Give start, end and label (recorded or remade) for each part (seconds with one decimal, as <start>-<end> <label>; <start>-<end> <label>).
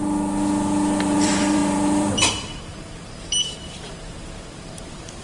0.0-1.0 recorded; 1.0-5.2 remade